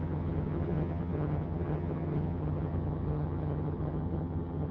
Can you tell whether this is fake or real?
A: fake